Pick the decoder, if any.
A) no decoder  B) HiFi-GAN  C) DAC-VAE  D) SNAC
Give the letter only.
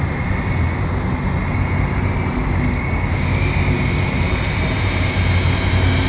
A